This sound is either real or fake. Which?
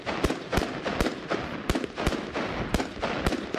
real